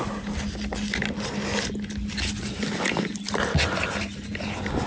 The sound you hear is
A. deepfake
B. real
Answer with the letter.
B